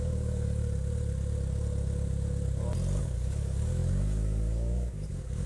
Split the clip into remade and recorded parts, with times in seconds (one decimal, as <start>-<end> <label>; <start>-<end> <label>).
0.0-0.6 remade; 0.6-3.0 recorded; 3.0-5.5 remade